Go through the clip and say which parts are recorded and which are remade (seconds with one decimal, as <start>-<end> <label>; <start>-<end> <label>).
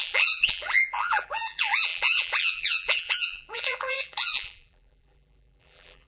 0.0-6.1 remade